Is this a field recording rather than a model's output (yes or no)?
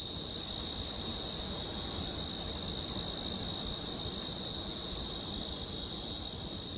yes